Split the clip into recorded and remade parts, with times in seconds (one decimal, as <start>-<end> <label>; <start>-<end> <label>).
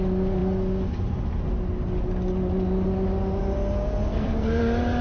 0.0-4.1 recorded; 4.1-4.6 remade; 4.6-5.0 recorded